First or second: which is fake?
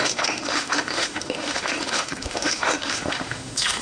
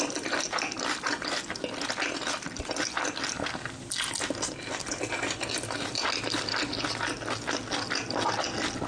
first